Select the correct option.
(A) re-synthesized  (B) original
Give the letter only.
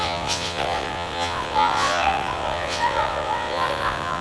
A